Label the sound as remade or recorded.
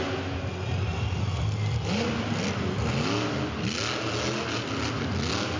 recorded